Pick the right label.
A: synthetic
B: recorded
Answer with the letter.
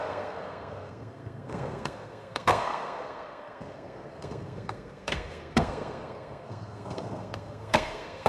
A